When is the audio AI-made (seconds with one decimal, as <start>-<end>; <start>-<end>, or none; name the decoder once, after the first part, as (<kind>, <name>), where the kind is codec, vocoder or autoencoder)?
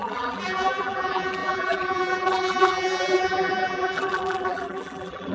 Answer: 0.0-5.3 (vocoder, BigVGAN v2)